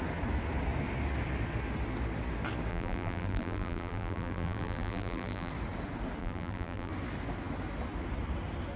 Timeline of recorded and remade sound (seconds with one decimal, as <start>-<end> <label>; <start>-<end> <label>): 0.0-2.7 recorded; 2.7-5.5 remade; 5.5-6.2 recorded; 6.2-6.9 remade; 6.9-8.8 recorded